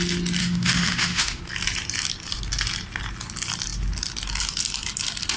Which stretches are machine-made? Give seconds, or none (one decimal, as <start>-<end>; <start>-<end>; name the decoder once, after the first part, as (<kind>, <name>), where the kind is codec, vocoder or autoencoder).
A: 0.4-1.4 (autoencoder, DAC-VAE)